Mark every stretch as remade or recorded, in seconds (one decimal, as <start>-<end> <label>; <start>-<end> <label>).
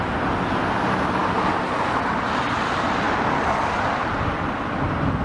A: 0.0-5.2 recorded